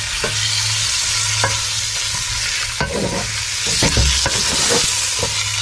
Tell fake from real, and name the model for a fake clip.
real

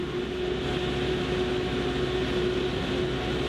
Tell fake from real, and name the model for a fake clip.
real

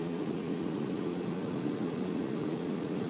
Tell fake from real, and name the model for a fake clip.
fake, vocoder, Vocos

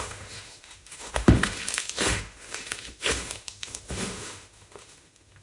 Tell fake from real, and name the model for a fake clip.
fake, autoencoder, DAC-VAE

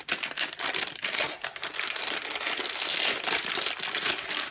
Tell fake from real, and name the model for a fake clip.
real